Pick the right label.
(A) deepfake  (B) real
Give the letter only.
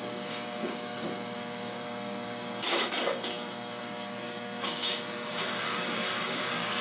A